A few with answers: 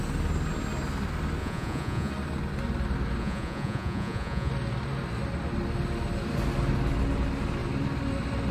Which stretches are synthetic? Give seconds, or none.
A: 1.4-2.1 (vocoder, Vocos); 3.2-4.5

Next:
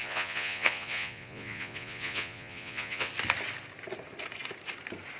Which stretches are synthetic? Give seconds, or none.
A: 0.0-3.1 (vocoder, Vocos)

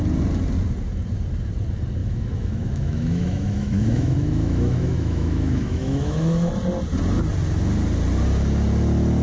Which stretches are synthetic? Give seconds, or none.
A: 2.0-6.5 (autoencoder, DAC-VAE)

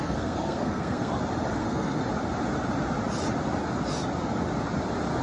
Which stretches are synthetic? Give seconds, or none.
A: 0.0-1.1 (codec, SNAC); 1.6-2.0

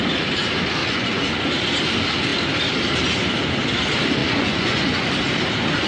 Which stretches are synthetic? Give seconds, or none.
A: 0.8-1.4 (vocoder, Vocos); 4.2-5.1

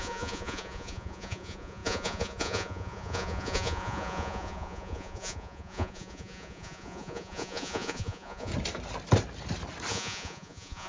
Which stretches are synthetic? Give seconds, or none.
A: 0.0-8.5 (vocoder, Vocos); 9.9-10.9

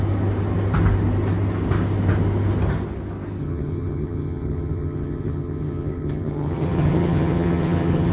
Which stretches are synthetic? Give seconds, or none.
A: 3.4-8.1 (vocoder, HiFi-GAN)

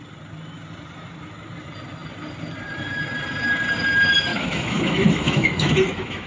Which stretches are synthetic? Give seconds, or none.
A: 4.3-6.3 (autoencoder, DAC-VAE)